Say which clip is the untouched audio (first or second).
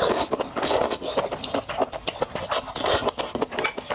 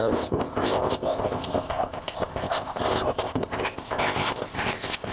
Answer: first